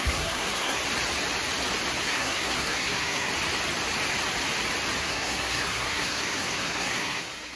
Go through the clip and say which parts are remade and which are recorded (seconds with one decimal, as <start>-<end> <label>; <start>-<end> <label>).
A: 0.0-0.8 remade; 0.8-2.0 recorded; 2.0-3.3 remade; 3.3-5.0 recorded; 5.0-7.6 remade